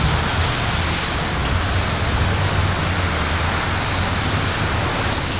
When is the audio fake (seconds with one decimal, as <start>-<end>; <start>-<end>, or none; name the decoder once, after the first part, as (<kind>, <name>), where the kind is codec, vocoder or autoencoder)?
none